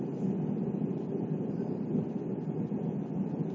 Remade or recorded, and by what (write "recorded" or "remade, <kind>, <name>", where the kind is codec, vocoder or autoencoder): recorded